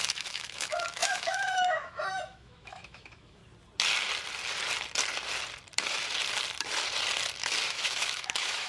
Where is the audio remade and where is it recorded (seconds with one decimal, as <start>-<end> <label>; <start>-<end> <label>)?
0.0-3.4 remade; 3.4-7.7 recorded; 7.7-8.7 remade